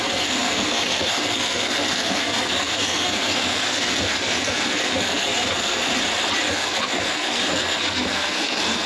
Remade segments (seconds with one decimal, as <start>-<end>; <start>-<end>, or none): 0.0-5.9; 6.5-8.9